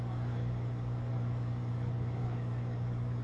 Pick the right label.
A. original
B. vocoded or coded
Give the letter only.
B